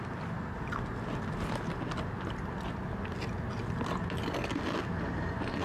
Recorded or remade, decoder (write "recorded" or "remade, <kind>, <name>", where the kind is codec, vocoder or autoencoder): recorded